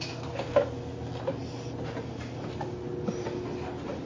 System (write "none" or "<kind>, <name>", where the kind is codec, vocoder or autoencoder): none